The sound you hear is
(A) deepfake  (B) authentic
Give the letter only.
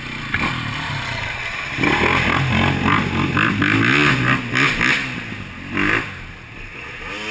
B